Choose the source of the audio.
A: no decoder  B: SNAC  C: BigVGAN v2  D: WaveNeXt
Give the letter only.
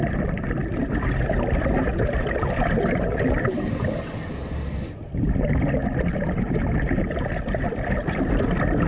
A